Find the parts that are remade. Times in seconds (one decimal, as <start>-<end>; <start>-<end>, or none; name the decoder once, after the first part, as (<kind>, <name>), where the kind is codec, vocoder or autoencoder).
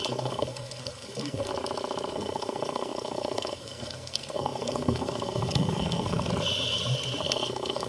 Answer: 0.0-1.5 (codec, SNAC); 2.1-6.3; 7.2-7.9